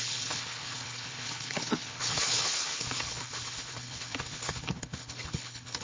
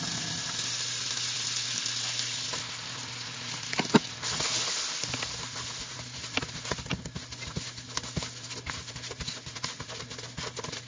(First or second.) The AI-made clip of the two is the first